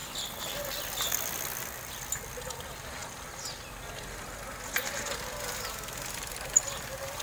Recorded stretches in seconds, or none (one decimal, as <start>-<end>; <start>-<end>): 0.0-7.2